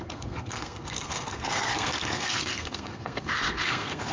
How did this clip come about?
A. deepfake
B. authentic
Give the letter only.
A